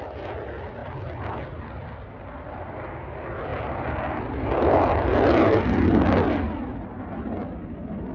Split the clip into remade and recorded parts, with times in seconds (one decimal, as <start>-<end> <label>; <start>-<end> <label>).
0.0-8.1 recorded